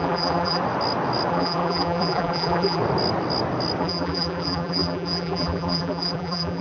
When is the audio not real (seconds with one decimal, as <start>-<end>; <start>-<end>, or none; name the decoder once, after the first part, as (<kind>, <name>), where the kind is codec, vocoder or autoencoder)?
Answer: 0.0-0.6 (vocoder, BigVGAN v2); 1.3-2.8; 3.8-6.6